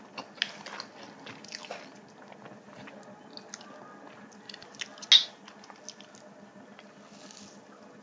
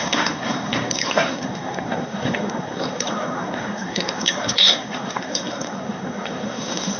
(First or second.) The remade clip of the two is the second